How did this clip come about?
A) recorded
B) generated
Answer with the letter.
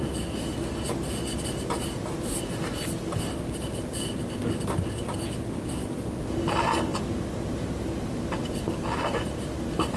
A